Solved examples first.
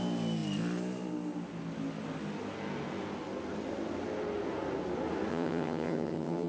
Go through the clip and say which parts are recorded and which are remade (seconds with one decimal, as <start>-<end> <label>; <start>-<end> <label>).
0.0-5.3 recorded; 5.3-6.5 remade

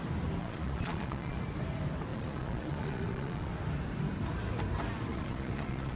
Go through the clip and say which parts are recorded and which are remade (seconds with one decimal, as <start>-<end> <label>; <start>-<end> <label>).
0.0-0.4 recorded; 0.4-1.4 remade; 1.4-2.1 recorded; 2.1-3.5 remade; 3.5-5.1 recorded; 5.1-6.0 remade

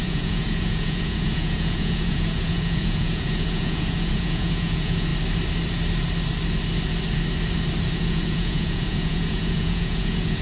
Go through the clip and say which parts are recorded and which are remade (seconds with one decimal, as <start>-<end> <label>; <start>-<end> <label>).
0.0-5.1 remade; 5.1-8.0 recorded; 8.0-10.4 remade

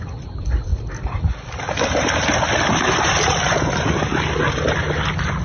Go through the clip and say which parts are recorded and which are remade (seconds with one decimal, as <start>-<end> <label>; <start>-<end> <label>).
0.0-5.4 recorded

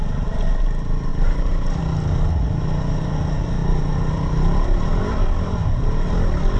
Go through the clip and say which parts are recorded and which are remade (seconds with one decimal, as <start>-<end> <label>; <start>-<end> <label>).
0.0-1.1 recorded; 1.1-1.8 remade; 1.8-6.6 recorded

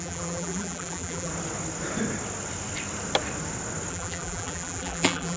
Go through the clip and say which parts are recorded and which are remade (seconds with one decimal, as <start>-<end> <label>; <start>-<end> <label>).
0.0-1.3 remade; 1.3-3.9 recorded; 3.9-5.4 remade

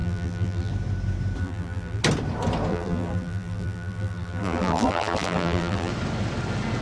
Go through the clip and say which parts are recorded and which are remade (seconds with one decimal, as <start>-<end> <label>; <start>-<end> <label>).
0.0-0.7 remade; 0.7-1.4 recorded; 1.4-2.0 remade; 2.0-2.7 recorded; 2.7-5.9 remade; 5.9-6.8 recorded